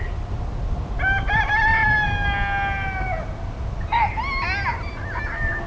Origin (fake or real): real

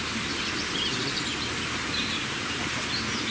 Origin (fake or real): real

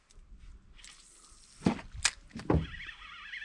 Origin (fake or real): real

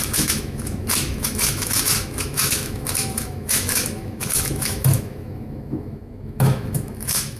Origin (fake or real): fake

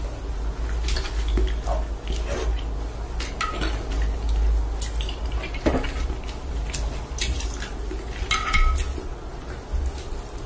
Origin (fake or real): real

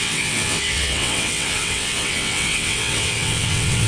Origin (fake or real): fake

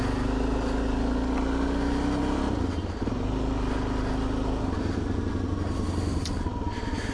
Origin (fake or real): real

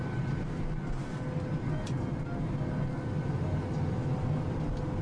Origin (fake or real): real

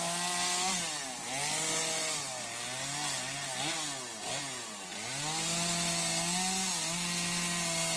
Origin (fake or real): real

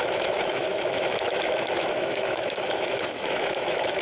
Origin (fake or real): fake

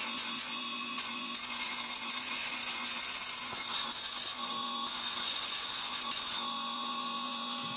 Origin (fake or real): fake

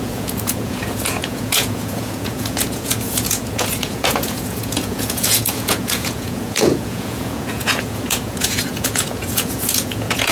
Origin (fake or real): fake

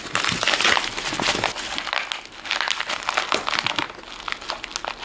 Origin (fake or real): real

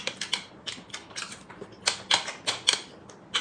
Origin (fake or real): real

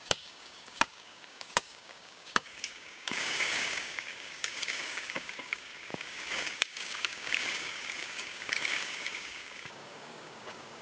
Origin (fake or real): fake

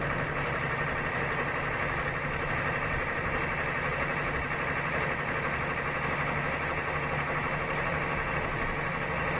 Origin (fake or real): real